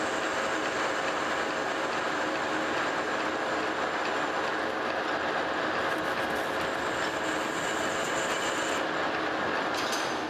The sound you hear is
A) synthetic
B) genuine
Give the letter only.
B